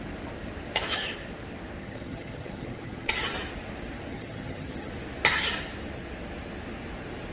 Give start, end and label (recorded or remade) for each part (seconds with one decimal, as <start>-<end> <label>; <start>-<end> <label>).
0.0-1.8 recorded; 1.8-3.1 remade; 3.1-4.1 recorded; 4.1-4.9 remade; 4.9-7.3 recorded